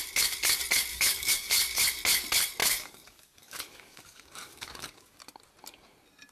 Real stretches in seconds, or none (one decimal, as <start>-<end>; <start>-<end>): 0.0-0.9; 1.5-2.6; 5.2-6.3